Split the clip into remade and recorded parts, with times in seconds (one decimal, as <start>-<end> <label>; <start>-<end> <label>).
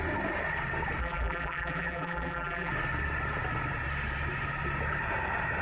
0.0-1.0 recorded; 1.0-2.7 remade; 2.7-5.6 recorded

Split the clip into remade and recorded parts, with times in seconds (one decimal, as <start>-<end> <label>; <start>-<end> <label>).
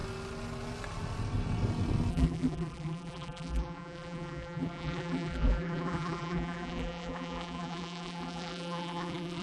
0.0-2.1 recorded; 2.1-9.4 remade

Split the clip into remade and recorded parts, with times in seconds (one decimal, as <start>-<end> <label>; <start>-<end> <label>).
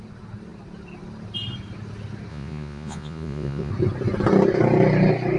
0.0-2.3 recorded; 2.3-3.7 remade; 3.7-5.4 recorded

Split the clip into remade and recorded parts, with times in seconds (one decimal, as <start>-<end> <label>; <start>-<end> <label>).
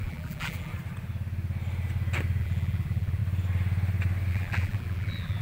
0.0-0.7 remade; 0.7-2.4 recorded; 2.4-3.2 remade; 3.2-4.3 recorded; 4.3-5.4 remade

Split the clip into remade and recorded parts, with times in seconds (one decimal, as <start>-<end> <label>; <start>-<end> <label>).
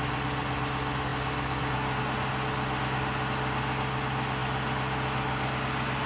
0.0-6.1 recorded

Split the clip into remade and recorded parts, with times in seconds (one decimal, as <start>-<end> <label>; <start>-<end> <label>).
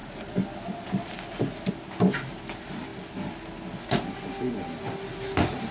0.0-5.7 recorded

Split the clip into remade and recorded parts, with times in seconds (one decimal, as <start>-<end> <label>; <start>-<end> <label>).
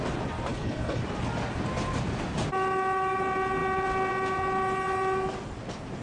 0.0-0.5 recorded; 0.5-1.0 remade; 1.0-6.0 recorded